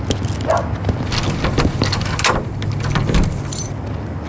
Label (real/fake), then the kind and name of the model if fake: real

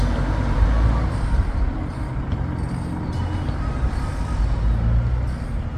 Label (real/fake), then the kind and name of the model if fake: real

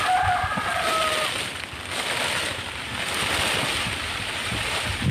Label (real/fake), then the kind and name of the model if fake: real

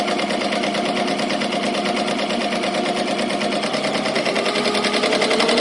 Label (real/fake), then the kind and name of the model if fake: real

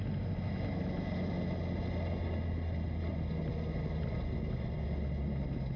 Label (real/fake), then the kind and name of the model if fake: real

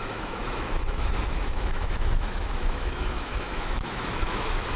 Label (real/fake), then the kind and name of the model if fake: fake, autoencoder, DAC-VAE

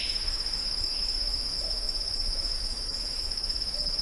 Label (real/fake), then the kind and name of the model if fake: fake, autoencoder, DAC-VAE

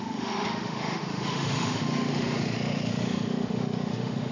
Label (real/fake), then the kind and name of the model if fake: fake, autoencoder, DAC-VAE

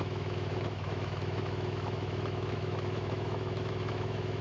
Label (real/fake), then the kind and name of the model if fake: fake, autoencoder, DAC-VAE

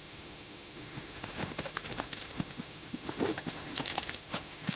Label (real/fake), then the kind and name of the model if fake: fake, autoencoder, DAC-VAE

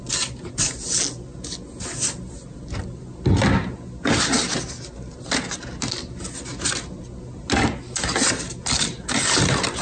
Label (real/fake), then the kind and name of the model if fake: real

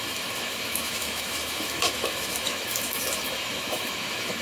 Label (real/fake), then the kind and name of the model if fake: fake, autoencoder, DAC-VAE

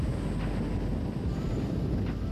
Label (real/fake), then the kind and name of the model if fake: real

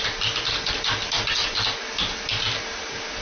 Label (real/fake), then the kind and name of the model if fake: real